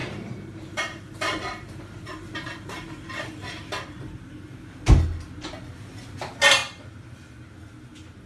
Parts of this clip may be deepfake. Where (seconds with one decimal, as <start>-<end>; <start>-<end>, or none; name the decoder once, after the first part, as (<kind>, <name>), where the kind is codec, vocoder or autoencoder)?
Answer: 0.0-3.6 (vocoder, BigVGAN v2); 6.6-8.3